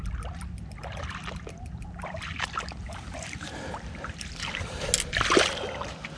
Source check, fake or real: real